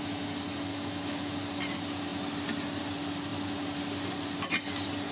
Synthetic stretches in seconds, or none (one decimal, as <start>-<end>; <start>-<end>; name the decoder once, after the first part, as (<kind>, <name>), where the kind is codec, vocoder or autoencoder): 0.7-1.3 (autoencoder, DAC-VAE)